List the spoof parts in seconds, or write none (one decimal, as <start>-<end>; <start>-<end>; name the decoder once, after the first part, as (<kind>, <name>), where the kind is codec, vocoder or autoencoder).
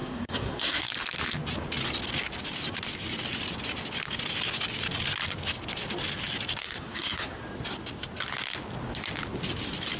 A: 0.0-0.9 (codec, SNAC); 6.6-7.4